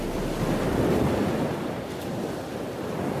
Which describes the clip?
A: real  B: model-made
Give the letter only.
A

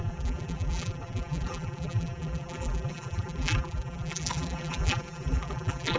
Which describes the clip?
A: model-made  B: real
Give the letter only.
A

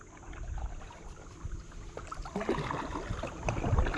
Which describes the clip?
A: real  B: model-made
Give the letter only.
A